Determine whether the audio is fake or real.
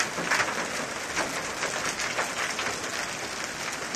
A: real